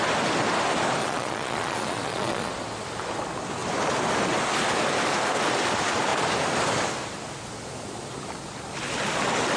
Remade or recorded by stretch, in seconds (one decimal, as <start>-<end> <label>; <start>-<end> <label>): 0.0-1.0 recorded; 1.0-2.5 remade; 2.5-9.6 recorded